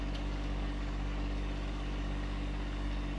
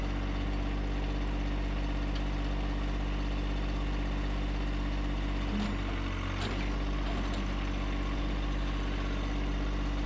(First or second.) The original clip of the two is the second